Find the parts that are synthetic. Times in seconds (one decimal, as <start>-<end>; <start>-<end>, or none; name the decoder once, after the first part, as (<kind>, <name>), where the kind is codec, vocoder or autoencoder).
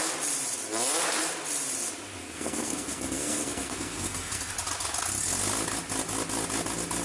2.2-4.5 (codec, SNAC)